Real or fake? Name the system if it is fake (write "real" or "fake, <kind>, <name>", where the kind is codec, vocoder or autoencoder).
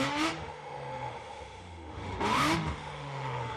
fake, autoencoder, DAC-VAE